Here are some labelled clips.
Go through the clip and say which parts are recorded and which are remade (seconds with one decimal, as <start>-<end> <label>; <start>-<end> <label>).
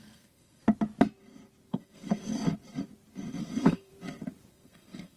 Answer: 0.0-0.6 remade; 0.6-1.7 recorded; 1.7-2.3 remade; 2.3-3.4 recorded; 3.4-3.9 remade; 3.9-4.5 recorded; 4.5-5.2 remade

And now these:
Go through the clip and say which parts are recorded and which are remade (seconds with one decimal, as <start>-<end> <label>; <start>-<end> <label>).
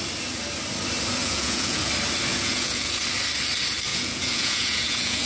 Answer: 0.0-1.2 recorded; 1.2-1.9 remade; 1.9-2.3 recorded; 2.3-3.0 remade; 3.0-3.9 recorded; 3.9-5.3 remade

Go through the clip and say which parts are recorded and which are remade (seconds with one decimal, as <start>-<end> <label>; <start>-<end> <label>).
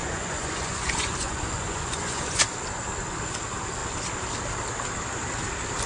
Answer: 0.0-2.4 remade; 2.4-5.9 recorded